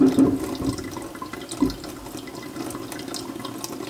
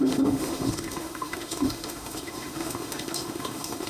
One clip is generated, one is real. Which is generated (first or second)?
second